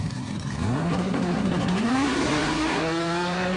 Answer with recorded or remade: remade